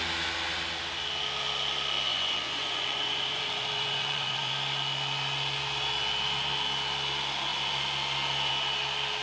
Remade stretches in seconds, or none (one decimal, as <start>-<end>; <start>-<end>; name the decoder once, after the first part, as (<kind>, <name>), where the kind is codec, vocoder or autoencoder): 2.1-4.5 (vocoder, Vocos)